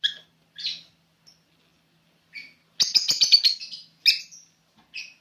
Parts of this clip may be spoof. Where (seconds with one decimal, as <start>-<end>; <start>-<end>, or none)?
none